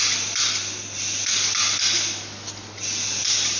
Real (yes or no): yes